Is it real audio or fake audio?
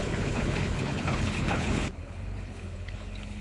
fake